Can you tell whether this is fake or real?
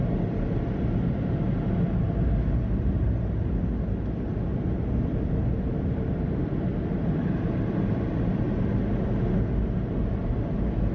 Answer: real